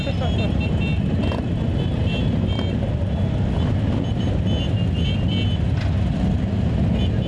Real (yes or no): yes